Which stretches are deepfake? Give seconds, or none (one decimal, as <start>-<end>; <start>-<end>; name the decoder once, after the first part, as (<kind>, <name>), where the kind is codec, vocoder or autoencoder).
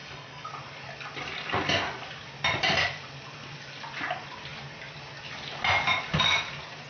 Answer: 0.0-0.5 (codec, DAC)